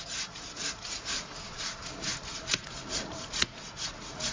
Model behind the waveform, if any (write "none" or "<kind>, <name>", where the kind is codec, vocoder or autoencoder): vocoder, Vocos